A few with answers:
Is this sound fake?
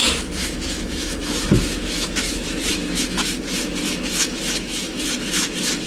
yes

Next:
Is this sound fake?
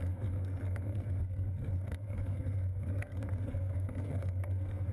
yes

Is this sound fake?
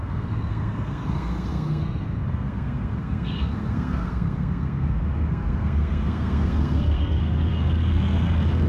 yes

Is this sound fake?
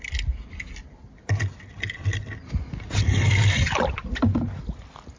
no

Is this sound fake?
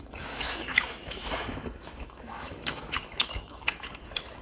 yes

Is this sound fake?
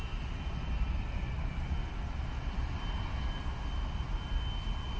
no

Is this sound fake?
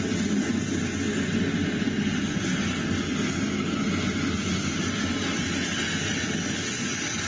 no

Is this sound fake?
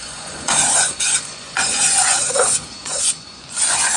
yes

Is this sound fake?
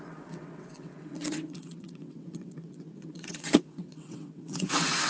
yes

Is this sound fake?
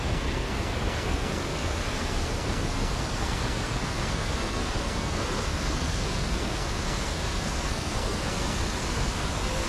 yes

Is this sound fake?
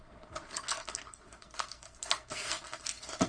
yes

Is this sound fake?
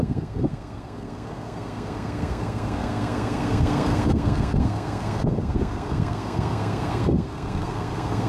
yes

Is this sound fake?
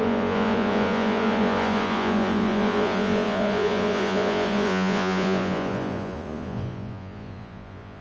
yes